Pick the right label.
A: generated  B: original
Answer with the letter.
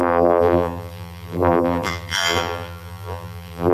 A